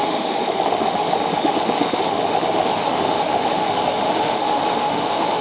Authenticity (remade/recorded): remade